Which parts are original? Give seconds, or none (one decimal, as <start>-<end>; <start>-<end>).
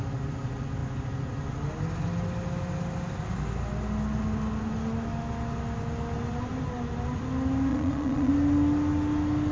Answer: 0.0-7.7; 8.3-9.5